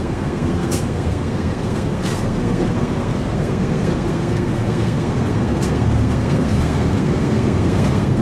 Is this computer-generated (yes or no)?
yes